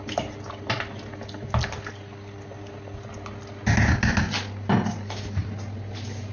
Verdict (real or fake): real